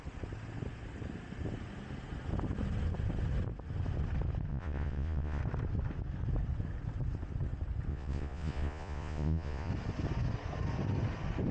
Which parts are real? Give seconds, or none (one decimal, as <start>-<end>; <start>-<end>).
0.0-4.5; 5.4-7.9; 9.7-11.5